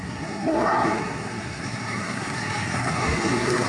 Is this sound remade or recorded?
remade